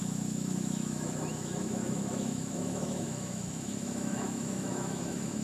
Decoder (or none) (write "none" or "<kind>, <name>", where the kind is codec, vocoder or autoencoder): autoencoder, DAC-VAE